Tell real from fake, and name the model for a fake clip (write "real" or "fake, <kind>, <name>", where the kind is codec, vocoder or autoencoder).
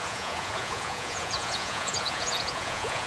fake, vocoder, Vocos